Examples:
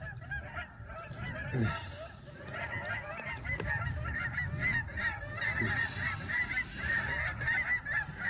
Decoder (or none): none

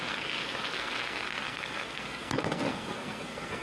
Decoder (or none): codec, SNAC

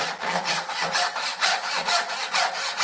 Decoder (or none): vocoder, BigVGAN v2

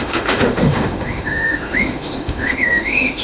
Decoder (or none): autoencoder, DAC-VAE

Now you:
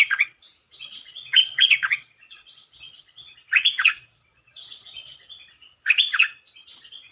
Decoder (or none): vocoder, Vocos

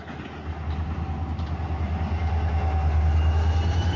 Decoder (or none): none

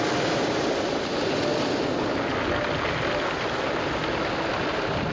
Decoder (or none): none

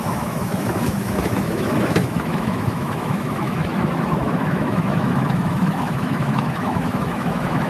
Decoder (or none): autoencoder, DAC-VAE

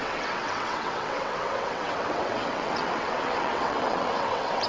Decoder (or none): vocoder, WaveNeXt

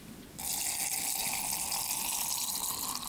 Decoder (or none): none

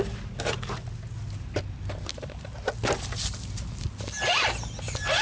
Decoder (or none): none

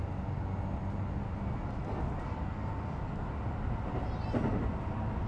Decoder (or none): none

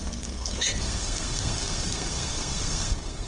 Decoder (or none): codec, SNAC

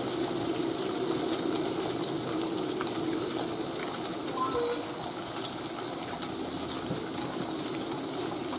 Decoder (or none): none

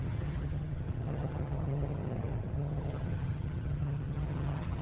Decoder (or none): vocoder, HiFi-GAN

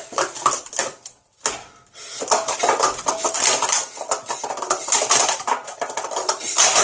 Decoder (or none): none